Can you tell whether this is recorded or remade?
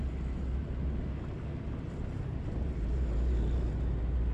recorded